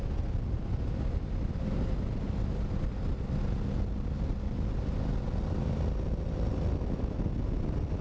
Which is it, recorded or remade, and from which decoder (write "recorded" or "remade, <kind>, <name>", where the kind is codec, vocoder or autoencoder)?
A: recorded